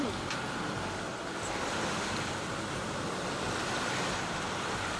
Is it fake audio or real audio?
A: real